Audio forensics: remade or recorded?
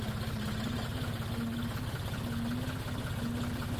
recorded